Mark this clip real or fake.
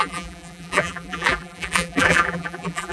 fake